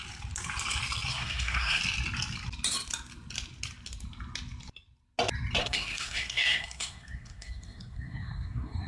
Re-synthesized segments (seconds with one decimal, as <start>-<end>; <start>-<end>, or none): 1.1-1.8; 5.6-8.9